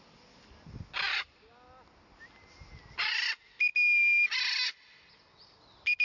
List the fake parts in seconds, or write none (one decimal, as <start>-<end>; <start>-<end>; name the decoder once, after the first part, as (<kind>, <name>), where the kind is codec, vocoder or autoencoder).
none